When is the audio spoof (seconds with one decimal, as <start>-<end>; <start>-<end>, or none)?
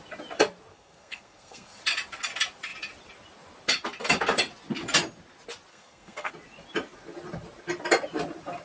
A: 0.7-1.8; 5.7-6.3